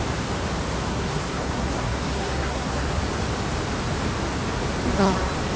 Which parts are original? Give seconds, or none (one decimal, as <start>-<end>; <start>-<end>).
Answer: 0.0-0.9; 2.9-5.6